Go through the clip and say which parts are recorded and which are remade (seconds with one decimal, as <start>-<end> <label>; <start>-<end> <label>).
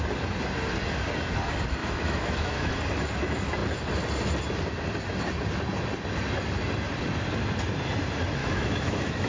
0.0-1.8 recorded; 1.8-2.7 remade; 2.7-8.4 recorded; 8.4-9.3 remade